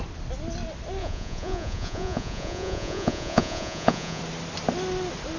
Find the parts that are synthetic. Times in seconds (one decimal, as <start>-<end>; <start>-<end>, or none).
1.0-4.2